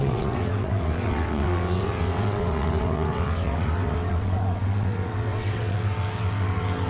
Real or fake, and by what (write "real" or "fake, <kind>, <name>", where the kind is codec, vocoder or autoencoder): fake, vocoder, WaveNeXt